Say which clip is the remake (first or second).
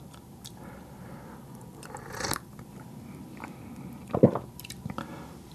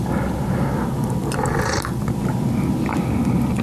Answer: first